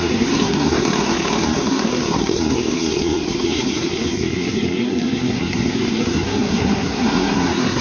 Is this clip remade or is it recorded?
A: remade